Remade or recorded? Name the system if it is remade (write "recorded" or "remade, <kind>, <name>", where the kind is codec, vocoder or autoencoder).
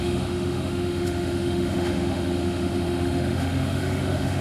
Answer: remade, autoencoder, DAC-VAE